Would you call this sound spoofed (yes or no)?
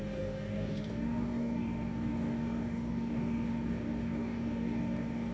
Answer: yes